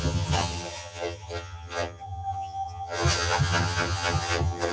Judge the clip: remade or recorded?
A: remade